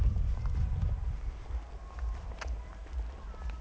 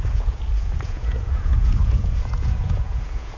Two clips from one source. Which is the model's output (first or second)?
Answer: second